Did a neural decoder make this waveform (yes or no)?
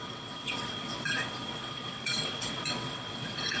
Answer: yes